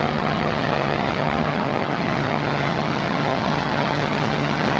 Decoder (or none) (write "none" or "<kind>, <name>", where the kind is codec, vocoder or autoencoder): vocoder, HiFi-GAN